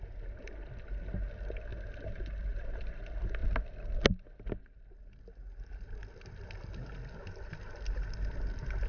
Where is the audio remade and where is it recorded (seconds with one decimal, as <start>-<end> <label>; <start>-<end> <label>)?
0.0-8.9 recorded